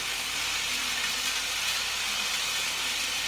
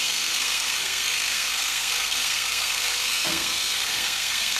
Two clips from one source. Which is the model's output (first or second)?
second